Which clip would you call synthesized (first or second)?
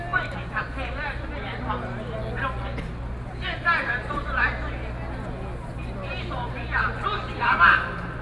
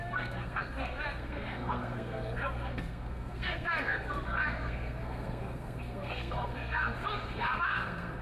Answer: second